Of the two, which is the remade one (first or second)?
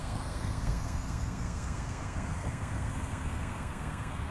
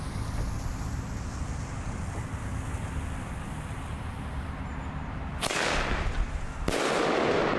first